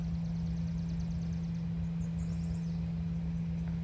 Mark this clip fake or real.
real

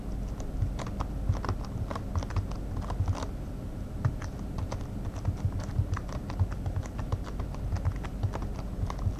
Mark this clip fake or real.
real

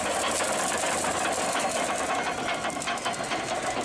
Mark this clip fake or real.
real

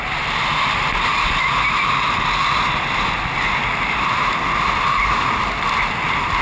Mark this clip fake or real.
real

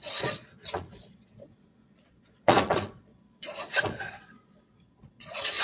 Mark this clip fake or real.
fake